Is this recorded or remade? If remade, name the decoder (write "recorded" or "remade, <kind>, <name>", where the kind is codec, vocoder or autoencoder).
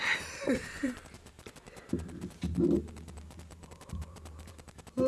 remade, vocoder, BigVGAN v2